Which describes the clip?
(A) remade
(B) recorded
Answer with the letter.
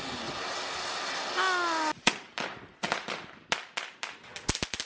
B